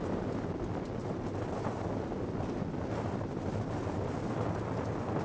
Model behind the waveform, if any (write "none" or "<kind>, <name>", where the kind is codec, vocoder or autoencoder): none